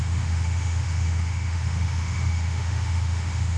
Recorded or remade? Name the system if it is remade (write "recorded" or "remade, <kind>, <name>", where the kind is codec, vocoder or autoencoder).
remade, autoencoder, DAC-VAE